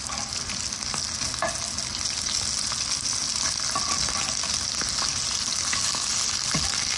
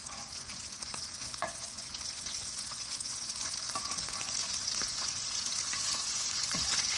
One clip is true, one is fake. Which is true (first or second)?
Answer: first